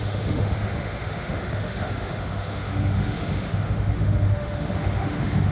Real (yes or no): no